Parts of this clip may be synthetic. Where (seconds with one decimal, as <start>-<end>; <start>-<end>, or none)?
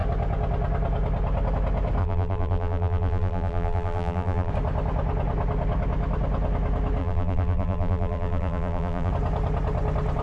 2.0-4.5; 7.0-9.1